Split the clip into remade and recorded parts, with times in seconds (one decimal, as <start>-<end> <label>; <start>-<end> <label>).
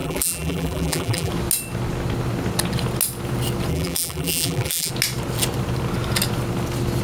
0.0-1.3 remade; 1.3-3.7 recorded; 3.7-4.9 remade; 4.9-7.0 recorded